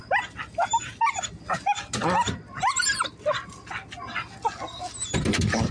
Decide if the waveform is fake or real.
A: real